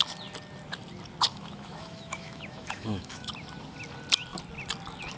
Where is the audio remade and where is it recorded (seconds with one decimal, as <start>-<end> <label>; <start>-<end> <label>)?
0.0-1.3 recorded; 1.3-3.3 remade; 3.3-5.2 recorded